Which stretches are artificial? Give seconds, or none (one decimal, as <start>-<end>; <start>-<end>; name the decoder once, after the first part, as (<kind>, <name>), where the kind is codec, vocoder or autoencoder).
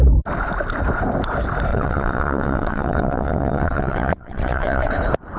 1.7-4.9 (vocoder, WaveNeXt)